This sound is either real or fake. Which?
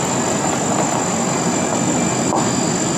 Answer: real